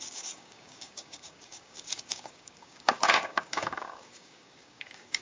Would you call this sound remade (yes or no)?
yes